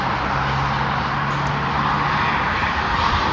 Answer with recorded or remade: recorded